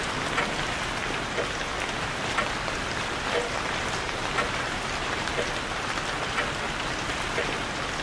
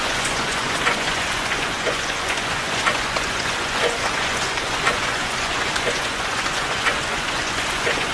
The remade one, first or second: second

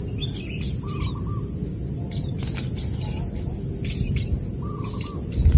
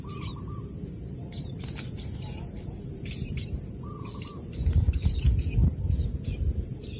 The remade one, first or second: second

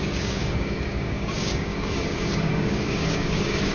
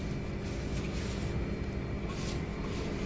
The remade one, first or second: first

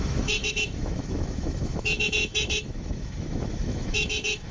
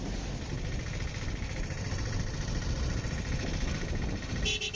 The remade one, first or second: first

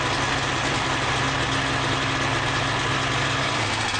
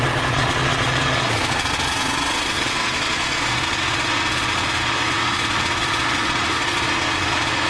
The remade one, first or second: second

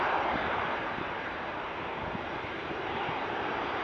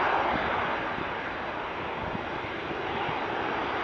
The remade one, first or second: first